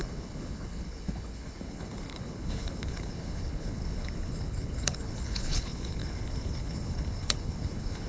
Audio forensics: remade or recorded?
remade